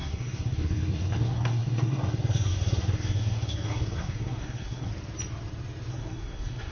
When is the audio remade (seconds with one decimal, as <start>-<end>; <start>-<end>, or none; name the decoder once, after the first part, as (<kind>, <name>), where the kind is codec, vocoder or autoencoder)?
0.0-4.9 (codec, SNAC); 5.9-6.7